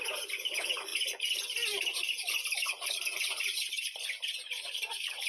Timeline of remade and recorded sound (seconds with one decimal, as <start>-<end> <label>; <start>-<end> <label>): 0.0-5.3 recorded